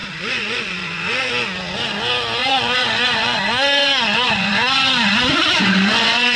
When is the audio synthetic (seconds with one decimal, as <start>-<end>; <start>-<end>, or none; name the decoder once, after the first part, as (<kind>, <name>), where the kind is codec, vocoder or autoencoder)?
0.0-1.3 (vocoder, Vocos); 2.4-6.4